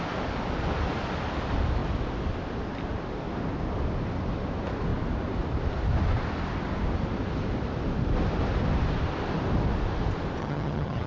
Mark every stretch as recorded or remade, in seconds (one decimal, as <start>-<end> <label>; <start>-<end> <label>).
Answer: 0.0-10.4 recorded; 10.4-11.1 remade